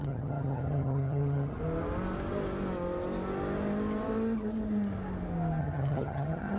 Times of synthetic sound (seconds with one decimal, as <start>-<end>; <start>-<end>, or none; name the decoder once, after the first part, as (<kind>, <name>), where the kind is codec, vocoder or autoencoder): 0.0-1.6 (vocoder, HiFi-GAN); 5.6-6.6

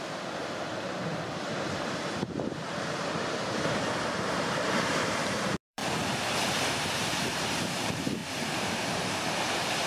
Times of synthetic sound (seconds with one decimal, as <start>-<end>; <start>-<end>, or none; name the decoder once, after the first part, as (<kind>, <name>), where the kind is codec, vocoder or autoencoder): 0.0-9.9 (vocoder, BigVGAN v2)

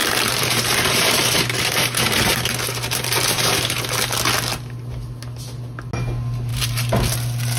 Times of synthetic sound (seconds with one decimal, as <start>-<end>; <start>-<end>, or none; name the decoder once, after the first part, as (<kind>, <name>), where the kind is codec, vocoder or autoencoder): 0.0-3.8 (vocoder, BigVGAN v2); 6.5-7.0